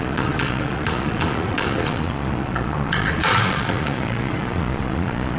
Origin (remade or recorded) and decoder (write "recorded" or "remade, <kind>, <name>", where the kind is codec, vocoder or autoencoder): remade, vocoder, Vocos